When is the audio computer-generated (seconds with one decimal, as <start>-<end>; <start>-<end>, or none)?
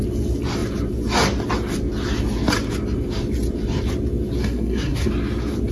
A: 4.4-5.1